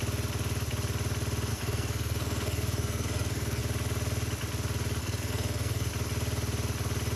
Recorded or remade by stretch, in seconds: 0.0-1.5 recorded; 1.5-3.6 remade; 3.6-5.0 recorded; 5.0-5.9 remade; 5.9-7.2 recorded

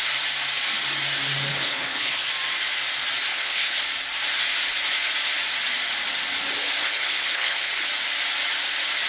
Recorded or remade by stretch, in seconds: 0.0-1.5 recorded; 1.5-2.3 remade; 2.3-3.3 recorded; 3.3-3.8 remade; 3.8-6.8 recorded; 6.8-7.9 remade; 7.9-9.1 recorded